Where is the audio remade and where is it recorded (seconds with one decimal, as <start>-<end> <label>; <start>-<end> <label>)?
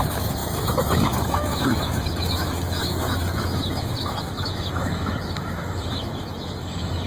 0.0-7.1 remade